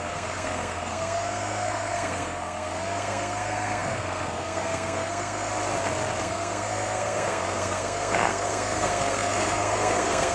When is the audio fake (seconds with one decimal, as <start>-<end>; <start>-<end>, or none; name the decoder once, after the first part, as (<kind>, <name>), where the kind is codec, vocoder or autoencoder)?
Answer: 0.0-5.5 (codec, SNAC); 6.2-10.3